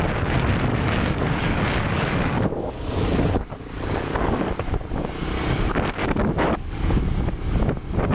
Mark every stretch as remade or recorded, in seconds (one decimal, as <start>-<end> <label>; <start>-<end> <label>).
0.0-0.7 recorded; 0.7-4.5 remade; 4.5-6.0 recorded; 6.0-7.0 remade; 7.0-8.1 recorded